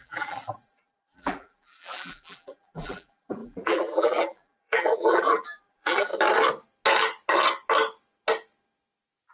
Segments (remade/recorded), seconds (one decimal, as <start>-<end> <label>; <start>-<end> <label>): 0.0-6.1 remade; 6.1-9.3 recorded